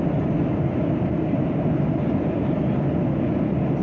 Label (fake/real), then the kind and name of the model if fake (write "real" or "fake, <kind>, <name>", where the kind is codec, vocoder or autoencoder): real